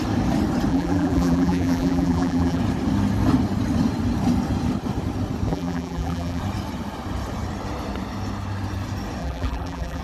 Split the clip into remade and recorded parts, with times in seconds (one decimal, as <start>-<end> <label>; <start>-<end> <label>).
0.0-0.7 recorded; 0.7-2.6 remade; 2.6-5.5 recorded; 5.5-6.4 remade; 6.4-9.2 recorded; 9.2-10.0 remade